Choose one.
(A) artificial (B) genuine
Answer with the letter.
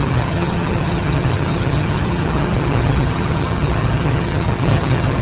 A